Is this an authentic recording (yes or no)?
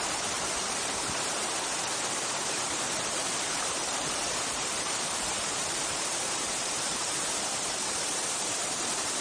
no